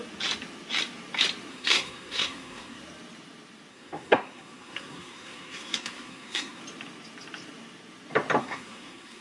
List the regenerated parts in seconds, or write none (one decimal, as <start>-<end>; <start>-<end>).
1.5-2.8; 3.7-6.6; 8.4-9.2